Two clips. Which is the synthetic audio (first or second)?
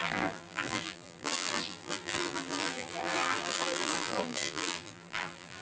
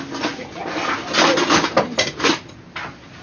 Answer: first